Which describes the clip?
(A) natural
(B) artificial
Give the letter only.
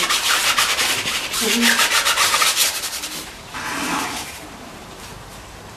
B